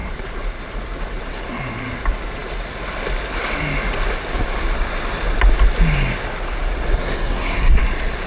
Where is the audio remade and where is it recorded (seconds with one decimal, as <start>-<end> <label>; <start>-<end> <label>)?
0.0-6.9 recorded; 6.9-7.8 remade; 7.8-8.3 recorded